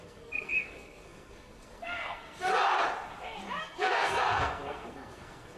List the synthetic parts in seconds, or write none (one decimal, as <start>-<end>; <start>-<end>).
0.0-2.5; 3.6-5.6